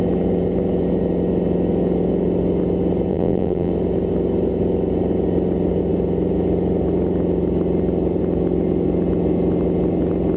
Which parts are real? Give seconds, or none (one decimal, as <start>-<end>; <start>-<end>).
0.0-3.1; 3.7-10.4